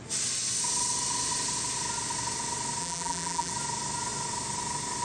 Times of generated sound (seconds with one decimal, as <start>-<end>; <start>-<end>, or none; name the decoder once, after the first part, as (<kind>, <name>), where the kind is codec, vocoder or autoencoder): 2.8-3.5 (vocoder, BigVGAN v2)